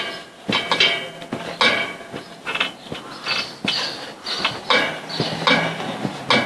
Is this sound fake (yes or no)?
no